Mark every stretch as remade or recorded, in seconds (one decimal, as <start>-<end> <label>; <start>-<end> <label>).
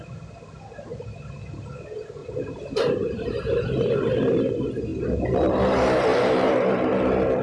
0.0-0.9 recorded; 0.9-1.5 remade; 1.5-2.2 recorded; 2.2-4.1 remade; 4.1-6.1 recorded; 6.1-6.9 remade; 6.9-7.4 recorded